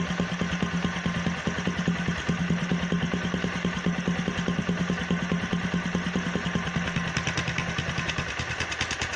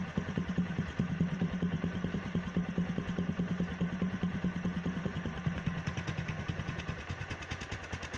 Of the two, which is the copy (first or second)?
second